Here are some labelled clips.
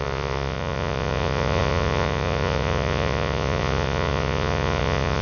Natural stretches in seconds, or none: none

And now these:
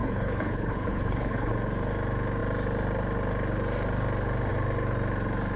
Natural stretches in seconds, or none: 1.5-5.6

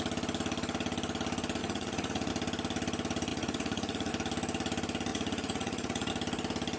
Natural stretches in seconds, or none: 0.0-1.6; 2.3-3.3; 4.1-5.1; 6.1-6.8

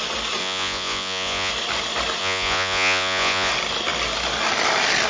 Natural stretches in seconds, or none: 0.0-0.4; 1.5-2.2; 3.5-5.1

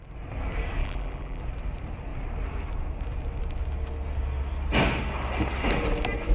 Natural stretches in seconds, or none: 0.0-0.8; 1.4-6.3

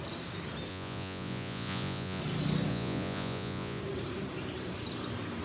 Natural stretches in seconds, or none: 0.0-0.7; 2.2-2.7; 3.8-5.4